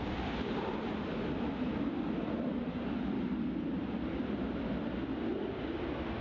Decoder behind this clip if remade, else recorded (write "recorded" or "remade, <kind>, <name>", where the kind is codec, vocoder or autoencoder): recorded